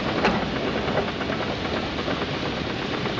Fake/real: real